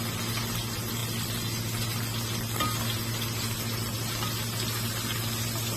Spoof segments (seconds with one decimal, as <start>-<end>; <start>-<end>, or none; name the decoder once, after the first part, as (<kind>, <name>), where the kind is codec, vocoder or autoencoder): none